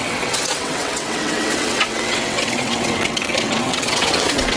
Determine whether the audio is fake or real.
fake